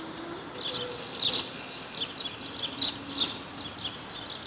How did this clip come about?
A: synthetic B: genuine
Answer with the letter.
B